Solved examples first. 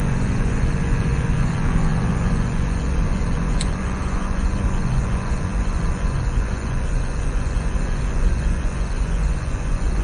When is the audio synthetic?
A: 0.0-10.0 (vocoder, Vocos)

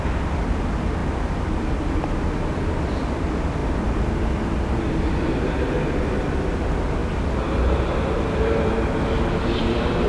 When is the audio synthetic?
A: none